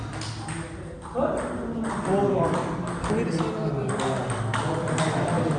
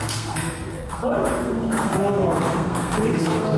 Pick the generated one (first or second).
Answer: second